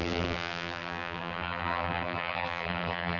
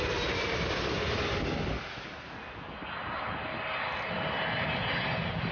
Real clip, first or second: second